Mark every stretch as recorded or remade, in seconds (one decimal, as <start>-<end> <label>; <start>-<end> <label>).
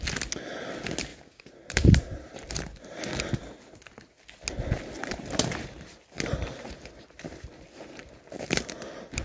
0.0-1.1 recorded; 1.1-3.0 remade; 3.0-5.0 recorded; 5.0-8.6 remade; 8.6-9.2 recorded